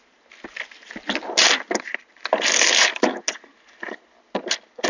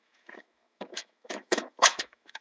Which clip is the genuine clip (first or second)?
first